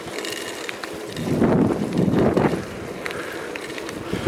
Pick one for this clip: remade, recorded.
recorded